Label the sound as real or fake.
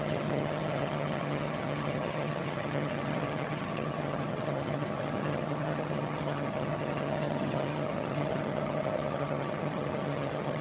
fake